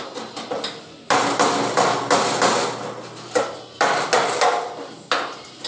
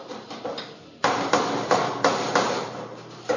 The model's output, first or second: second